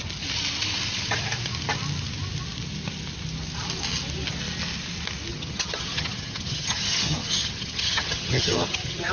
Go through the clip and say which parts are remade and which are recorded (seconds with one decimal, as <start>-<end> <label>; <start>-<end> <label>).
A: 0.0-5.3 recorded; 5.3-9.1 remade